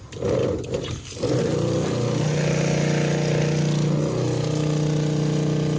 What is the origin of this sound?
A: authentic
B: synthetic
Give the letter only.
A